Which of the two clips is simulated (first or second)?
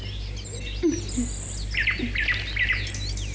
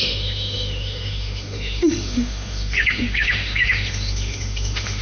second